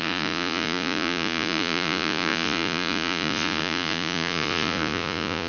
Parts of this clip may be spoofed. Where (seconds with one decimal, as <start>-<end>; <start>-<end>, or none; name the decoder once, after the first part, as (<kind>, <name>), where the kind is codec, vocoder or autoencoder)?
0.0-5.5 (vocoder, Vocos)